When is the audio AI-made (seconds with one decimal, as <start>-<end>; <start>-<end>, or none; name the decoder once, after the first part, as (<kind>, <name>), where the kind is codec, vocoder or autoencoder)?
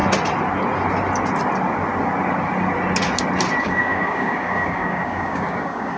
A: 3.6-6.0 (codec, DAC)